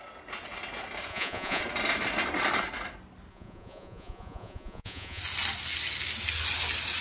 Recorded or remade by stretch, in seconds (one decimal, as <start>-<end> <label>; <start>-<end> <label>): 0.0-1.1 recorded; 1.1-1.6 remade; 1.6-3.3 recorded; 3.3-5.2 remade; 5.2-7.0 recorded